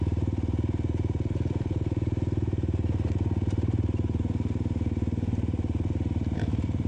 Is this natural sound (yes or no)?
no